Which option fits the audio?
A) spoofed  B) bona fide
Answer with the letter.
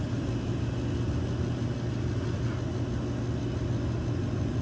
B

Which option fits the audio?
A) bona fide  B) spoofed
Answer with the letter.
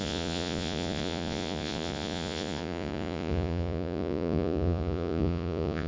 B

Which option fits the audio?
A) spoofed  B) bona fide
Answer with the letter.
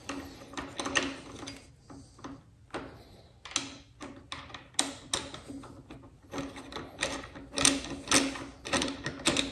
B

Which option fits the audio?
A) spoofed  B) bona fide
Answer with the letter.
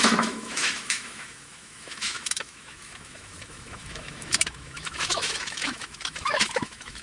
A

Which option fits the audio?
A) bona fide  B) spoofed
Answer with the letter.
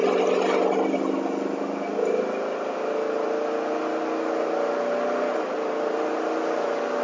A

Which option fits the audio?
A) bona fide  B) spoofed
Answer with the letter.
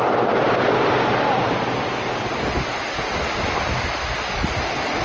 A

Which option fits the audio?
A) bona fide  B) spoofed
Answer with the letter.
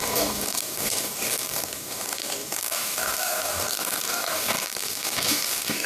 B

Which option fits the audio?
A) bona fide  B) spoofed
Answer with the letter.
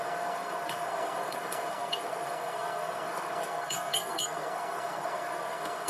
B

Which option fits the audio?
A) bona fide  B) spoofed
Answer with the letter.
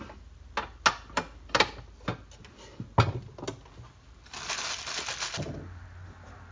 A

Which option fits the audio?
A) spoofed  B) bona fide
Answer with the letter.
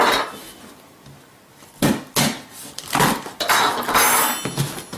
B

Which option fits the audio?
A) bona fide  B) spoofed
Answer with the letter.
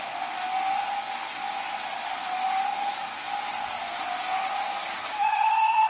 A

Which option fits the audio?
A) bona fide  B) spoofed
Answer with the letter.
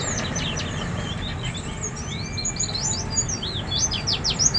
A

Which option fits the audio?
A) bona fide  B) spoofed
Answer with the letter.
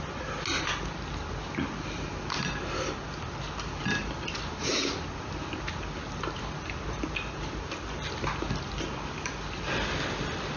A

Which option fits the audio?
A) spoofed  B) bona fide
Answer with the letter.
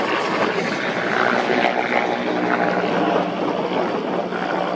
B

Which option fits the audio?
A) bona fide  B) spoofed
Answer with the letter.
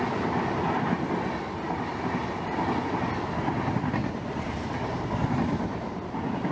A